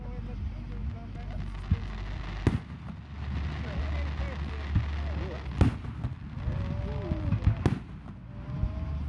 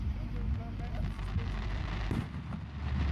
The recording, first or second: first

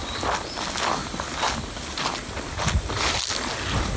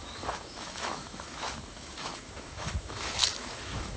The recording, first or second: first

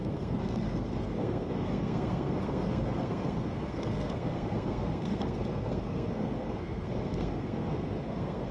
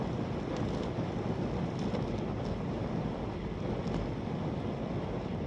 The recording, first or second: second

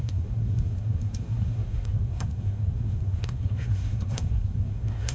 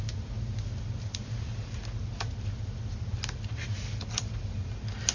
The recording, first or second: second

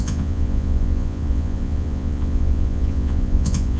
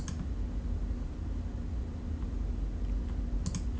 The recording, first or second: second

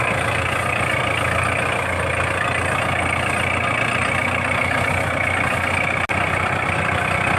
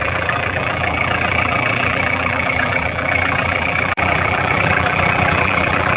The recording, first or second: first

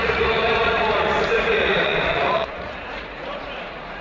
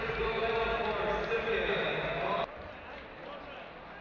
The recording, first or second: second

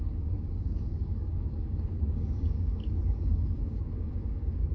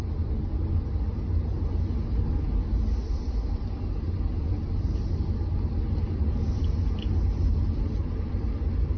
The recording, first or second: second